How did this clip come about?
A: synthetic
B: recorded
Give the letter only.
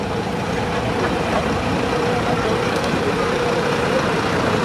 A